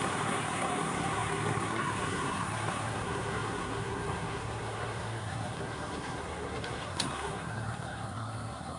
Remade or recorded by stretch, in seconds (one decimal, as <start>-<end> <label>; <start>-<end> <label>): 0.0-8.8 remade